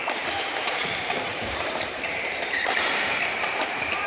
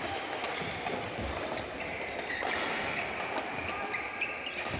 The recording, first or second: second